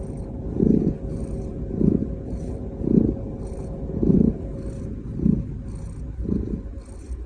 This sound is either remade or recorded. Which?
recorded